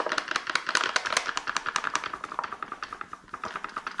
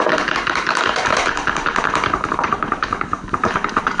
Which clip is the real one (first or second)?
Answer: first